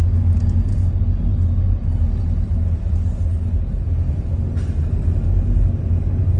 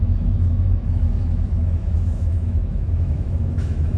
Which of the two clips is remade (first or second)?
second